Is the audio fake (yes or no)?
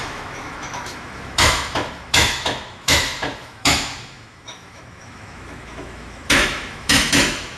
yes